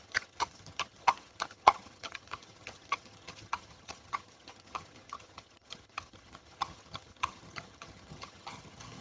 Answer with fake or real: fake